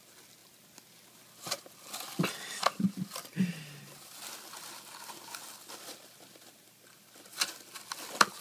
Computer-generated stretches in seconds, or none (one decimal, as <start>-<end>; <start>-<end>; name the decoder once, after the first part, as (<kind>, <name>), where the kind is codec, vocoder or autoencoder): none